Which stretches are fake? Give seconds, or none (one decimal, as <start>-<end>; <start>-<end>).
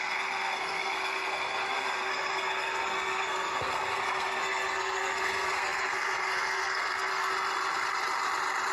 0.0-7.3